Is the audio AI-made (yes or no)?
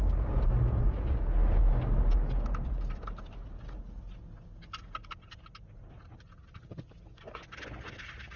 no